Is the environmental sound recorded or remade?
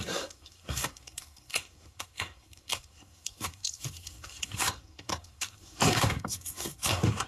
remade